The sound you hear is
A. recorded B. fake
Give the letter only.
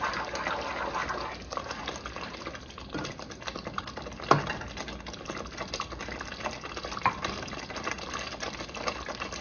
A